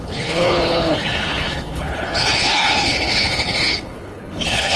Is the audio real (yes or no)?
no